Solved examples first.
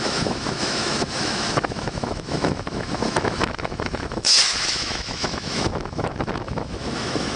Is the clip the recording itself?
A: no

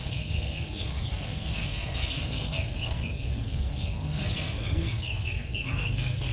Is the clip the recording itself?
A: no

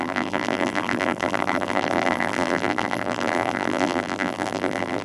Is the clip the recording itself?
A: no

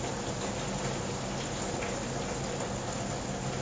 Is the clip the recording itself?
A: yes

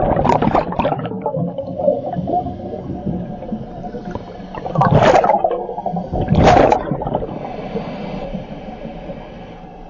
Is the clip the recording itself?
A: yes